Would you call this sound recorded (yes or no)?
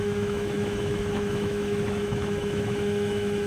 no